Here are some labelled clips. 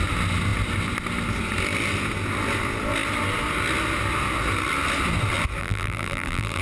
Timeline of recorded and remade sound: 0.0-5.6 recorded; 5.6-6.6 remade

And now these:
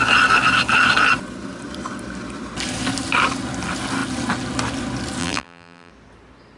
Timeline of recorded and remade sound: 0.0-5.2 recorded; 5.2-5.9 remade; 5.9-6.6 recorded

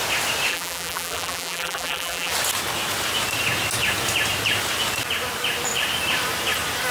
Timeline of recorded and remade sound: 0.0-0.5 recorded; 0.5-2.3 remade; 2.3-6.9 recorded

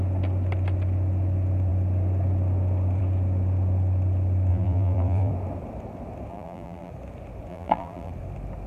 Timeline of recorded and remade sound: 0.0-4.5 recorded; 4.5-5.3 remade; 5.3-6.3 recorded; 6.3-6.9 remade; 6.9-7.5 recorded; 7.5-8.1 remade; 8.1-8.7 recorded

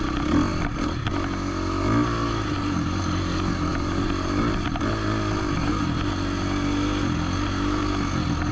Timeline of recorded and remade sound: 0.0-0.5 recorded; 0.5-1.1 remade; 1.1-3.7 recorded; 3.7-5.7 remade; 5.7-8.5 recorded

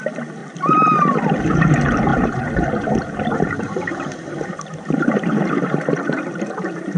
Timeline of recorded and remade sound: 0.0-0.4 remade; 0.4-1.3 recorded; 1.3-7.0 remade

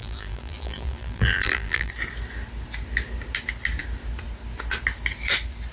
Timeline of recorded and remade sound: 0.0-1.9 remade; 1.9-5.7 recorded

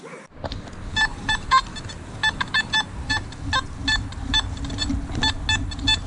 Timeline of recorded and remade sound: 0.0-6.1 recorded